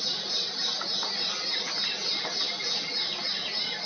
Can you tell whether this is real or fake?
real